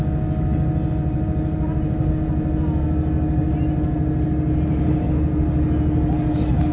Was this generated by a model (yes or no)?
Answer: no